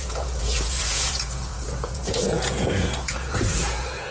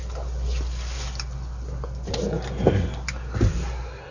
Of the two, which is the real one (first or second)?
second